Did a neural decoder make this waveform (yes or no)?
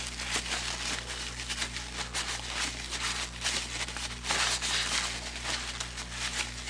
no